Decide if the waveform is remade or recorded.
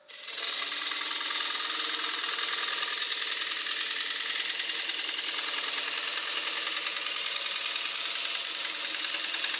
recorded